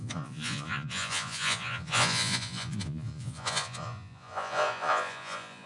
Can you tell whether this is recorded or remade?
remade